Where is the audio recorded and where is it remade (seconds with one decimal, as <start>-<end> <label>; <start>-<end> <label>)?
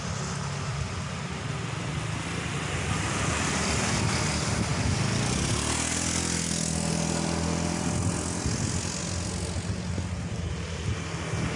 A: 0.0-11.6 recorded